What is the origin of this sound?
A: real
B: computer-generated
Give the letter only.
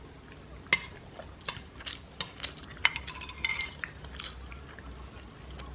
A